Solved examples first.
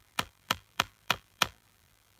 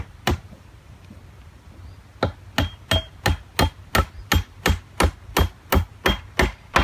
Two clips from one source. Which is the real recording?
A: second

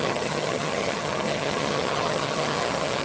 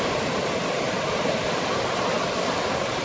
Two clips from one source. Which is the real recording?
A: second